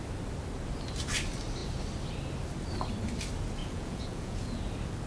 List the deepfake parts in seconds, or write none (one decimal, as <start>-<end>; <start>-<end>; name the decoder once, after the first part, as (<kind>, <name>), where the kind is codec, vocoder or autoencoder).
3.6-4.6 (vocoder, Vocos)